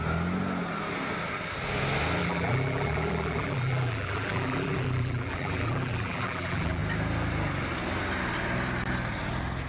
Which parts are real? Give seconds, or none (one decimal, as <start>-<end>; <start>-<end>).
0.0-2.2; 6.8-9.7